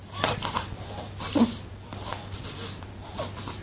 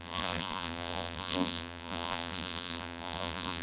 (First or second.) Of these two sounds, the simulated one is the second